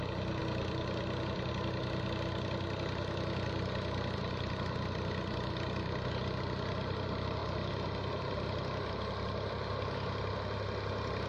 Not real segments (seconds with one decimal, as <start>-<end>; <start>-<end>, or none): 0.4-1.5